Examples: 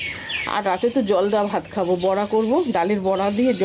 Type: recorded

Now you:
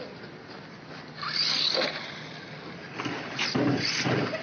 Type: recorded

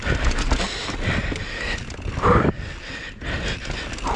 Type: recorded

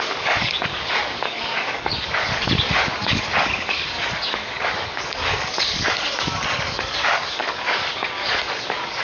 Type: remade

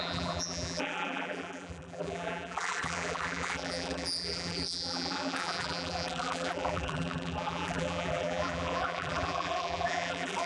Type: remade